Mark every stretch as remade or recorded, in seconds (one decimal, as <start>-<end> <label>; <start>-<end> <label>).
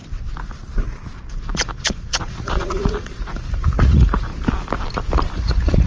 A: 0.0-1.3 recorded; 1.3-4.3 remade; 4.3-5.3 recorded; 5.3-5.9 remade